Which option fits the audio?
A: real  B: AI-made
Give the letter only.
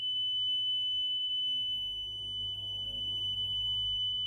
B